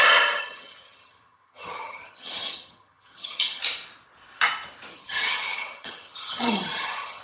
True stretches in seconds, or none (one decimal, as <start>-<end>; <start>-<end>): 0.0-0.4; 3.6-4.9